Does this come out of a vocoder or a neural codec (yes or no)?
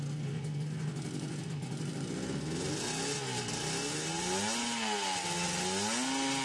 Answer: no